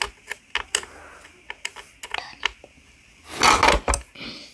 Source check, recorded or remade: recorded